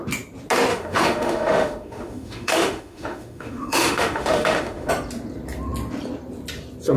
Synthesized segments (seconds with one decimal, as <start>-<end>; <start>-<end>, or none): 0.7-4.9